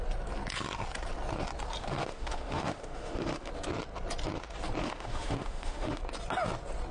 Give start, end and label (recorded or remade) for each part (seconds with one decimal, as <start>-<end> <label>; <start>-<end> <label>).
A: 0.0-1.8 recorded; 1.8-3.5 remade; 3.5-4.8 recorded; 4.8-6.0 remade; 6.0-6.9 recorded